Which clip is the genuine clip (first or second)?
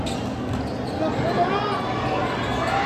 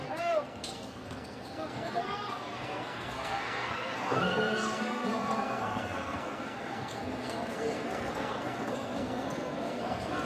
first